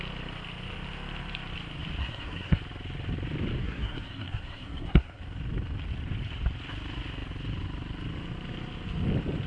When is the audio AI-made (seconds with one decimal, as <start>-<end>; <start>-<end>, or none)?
2.0-2.6; 3.6-5.2